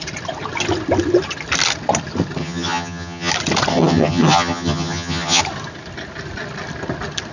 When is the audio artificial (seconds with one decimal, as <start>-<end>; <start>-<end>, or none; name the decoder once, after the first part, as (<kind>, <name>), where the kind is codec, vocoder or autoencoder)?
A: 2.4-3.3 (vocoder, HiFi-GAN); 3.7-5.4